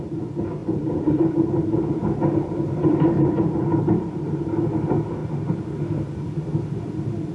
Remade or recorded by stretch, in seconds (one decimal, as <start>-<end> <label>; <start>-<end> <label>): 0.0-0.6 recorded; 0.6-4.5 remade; 4.5-5.2 recorded; 5.2-5.8 remade; 5.8-7.3 recorded